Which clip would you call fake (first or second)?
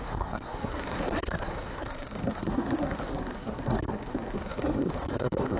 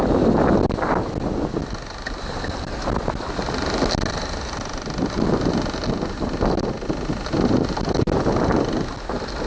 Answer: first